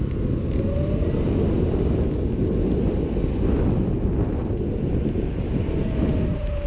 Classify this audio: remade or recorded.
recorded